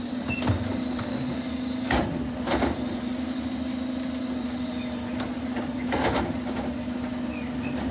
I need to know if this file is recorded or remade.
recorded